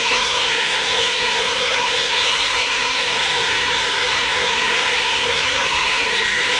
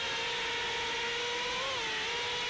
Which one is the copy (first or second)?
first